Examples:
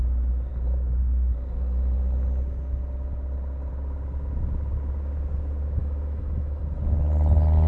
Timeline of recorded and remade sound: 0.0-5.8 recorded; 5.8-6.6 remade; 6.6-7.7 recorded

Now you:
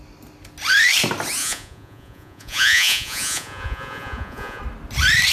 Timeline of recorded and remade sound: 0.0-1.4 recorded; 1.4-4.6 remade; 4.6-5.3 recorded

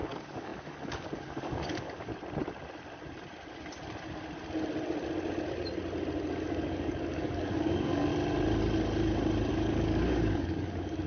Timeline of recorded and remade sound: 0.0-2.1 remade; 2.1-6.3 recorded; 6.3-8.1 remade; 8.1-9.5 recorded; 9.5-11.1 remade

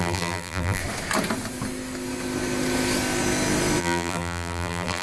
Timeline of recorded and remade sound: 0.0-0.8 remade; 0.8-3.8 recorded; 3.8-5.0 remade

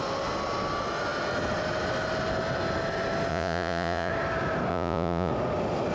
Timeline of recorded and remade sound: 0.0-3.3 recorded; 3.3-4.1 remade; 4.1-4.7 recorded; 4.7-5.3 remade; 5.3-5.9 recorded

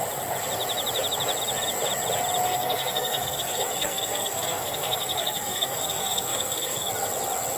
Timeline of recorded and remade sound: 0.0-2.5 recorded; 2.5-6.9 remade; 6.9-7.6 recorded

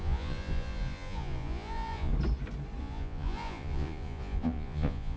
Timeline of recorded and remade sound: 0.0-2.1 remade; 2.1-2.8 recorded; 2.8-5.2 remade

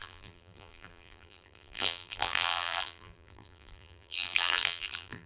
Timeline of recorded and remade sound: 0.0-5.3 remade